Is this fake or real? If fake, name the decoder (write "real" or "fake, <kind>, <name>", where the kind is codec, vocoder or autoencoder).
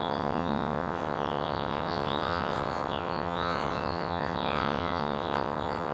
fake, vocoder, WaveNeXt